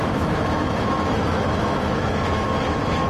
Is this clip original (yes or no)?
no